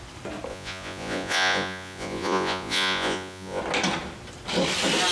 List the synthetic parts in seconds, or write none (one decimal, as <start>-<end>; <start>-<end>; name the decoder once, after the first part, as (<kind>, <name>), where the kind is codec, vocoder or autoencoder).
0.5-3.6 (vocoder, Vocos)